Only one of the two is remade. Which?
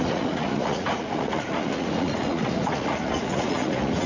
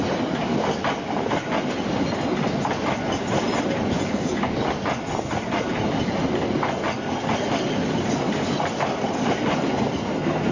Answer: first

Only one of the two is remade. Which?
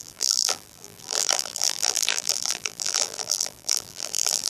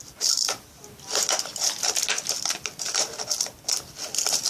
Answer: first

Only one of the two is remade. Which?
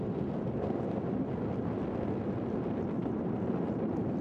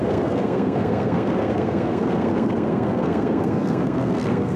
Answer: second